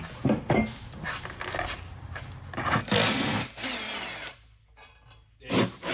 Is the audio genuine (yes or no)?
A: yes